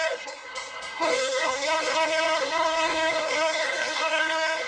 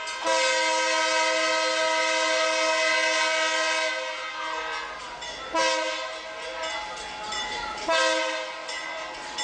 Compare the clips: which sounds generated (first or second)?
first